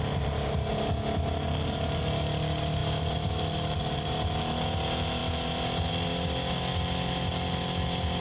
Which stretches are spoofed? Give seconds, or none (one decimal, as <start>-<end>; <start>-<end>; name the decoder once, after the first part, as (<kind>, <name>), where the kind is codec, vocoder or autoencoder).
none